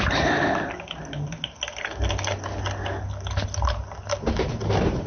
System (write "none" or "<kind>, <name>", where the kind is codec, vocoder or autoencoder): none